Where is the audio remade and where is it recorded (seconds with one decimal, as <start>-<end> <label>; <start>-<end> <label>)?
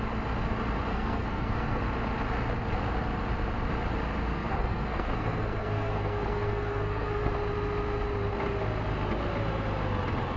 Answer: 0.0-0.9 recorded; 0.9-1.8 remade; 1.8-4.3 recorded; 4.3-7.3 remade; 7.3-10.4 recorded